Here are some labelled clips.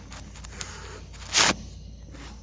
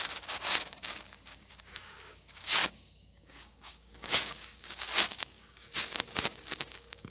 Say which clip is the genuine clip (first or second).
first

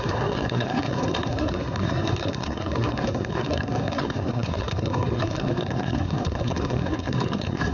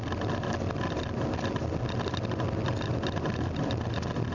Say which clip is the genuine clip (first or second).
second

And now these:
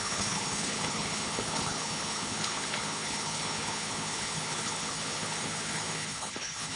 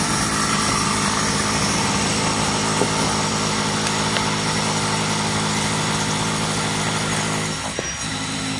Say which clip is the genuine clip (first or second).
second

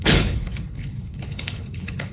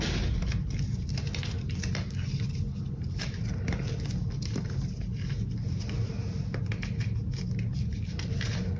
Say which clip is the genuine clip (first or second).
second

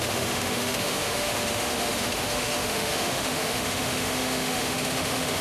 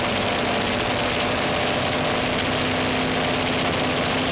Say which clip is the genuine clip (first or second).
second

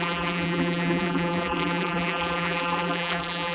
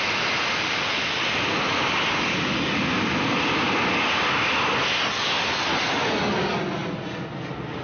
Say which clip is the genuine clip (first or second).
second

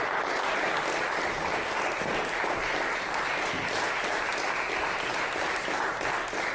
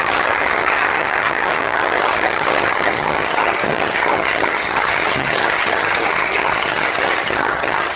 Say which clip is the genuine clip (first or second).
first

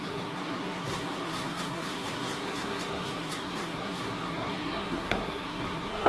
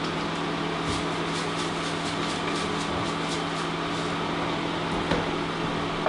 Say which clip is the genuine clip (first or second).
second